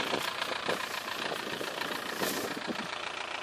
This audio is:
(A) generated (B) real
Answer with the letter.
A